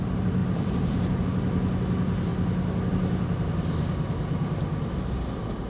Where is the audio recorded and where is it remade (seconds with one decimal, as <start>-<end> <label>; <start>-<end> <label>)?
0.0-0.4 recorded; 0.4-1.2 remade; 1.2-5.7 recorded